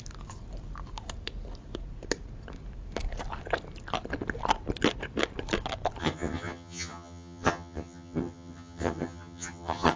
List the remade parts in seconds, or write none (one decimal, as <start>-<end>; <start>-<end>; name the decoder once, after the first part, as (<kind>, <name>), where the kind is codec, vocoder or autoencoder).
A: 6.0-10.0 (vocoder, HiFi-GAN)